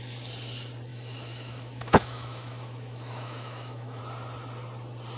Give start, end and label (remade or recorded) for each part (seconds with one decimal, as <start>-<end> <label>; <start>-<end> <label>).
0.0-0.9 recorded; 0.9-4.0 remade; 4.0-5.2 recorded